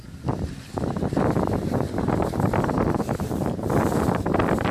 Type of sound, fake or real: real